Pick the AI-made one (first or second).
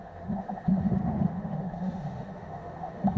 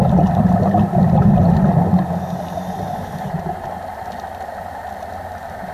first